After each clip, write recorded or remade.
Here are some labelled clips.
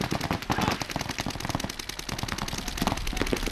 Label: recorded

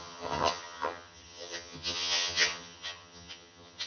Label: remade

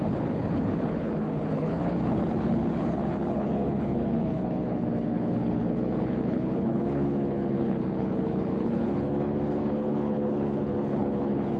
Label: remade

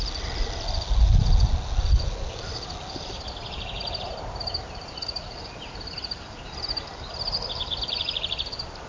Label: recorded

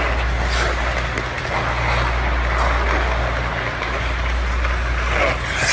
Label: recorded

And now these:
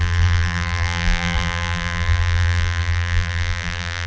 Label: remade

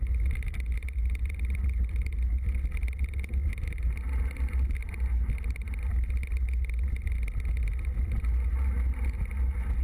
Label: recorded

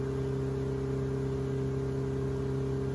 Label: recorded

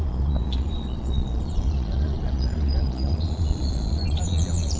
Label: remade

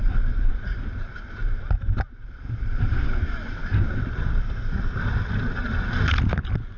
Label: recorded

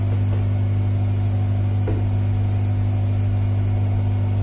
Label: recorded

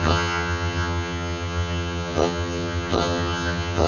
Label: remade